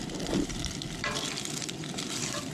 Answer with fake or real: fake